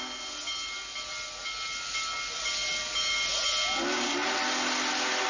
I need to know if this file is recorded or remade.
recorded